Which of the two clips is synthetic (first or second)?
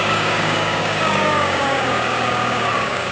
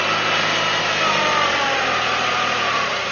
first